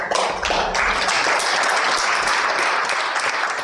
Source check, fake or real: real